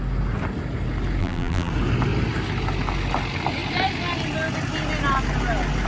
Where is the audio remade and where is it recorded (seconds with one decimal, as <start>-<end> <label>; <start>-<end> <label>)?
0.0-1.2 recorded; 1.2-1.7 remade; 1.7-5.9 recorded